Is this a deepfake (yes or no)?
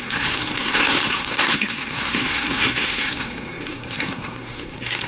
yes